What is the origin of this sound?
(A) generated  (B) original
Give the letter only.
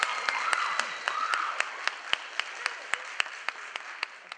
B